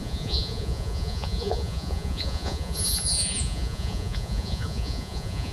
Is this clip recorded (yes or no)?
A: no